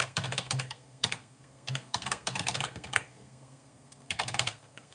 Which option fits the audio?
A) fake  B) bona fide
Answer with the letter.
A